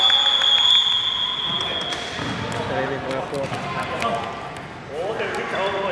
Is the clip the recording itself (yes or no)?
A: yes